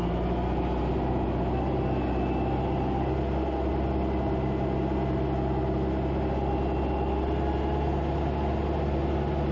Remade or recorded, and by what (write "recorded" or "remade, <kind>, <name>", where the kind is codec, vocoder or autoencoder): recorded